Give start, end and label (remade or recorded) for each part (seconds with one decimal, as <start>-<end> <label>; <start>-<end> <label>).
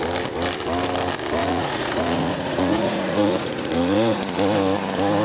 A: 0.0-1.4 recorded; 1.4-4.2 remade; 4.2-5.2 recorded